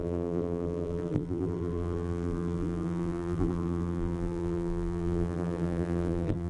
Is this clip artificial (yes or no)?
yes